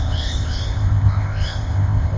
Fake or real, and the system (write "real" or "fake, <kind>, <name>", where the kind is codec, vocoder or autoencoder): fake, codec, ZipCodec